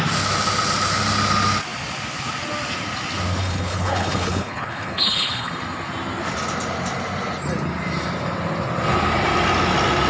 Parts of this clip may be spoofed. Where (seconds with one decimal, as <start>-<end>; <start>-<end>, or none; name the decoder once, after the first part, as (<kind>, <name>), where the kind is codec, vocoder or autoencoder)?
3.4-5.5 (codec, HILCodec)